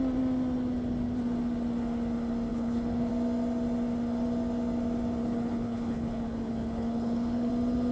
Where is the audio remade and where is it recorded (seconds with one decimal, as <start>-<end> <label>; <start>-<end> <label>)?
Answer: 0.0-2.5 recorded; 2.5-3.1 remade; 3.1-5.2 recorded; 5.2-7.5 remade; 7.5-7.9 recorded